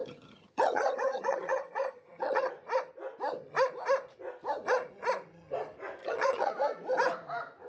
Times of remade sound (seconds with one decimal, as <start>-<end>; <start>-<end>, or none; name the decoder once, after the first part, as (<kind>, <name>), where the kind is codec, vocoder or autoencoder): 0.0-2.5 (vocoder, HiFi-GAN); 6.0-6.5